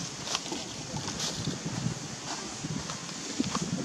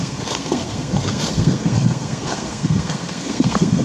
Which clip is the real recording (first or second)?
first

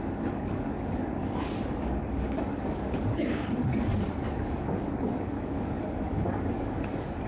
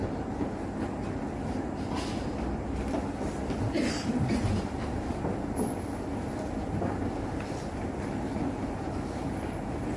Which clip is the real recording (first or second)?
second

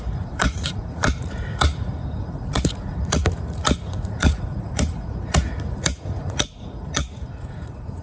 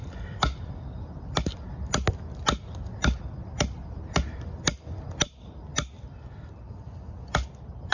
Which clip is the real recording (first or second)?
second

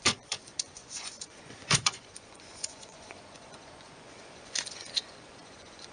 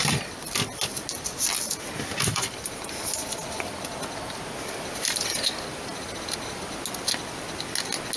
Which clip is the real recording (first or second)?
second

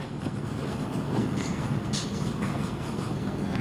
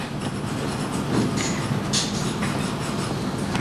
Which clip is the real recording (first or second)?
second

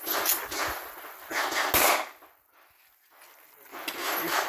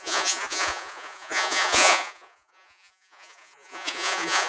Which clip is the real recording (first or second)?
first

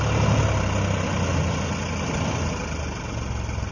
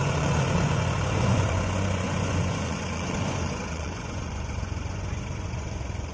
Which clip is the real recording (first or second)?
first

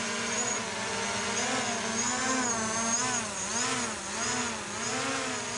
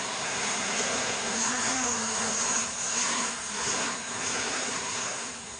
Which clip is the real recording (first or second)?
first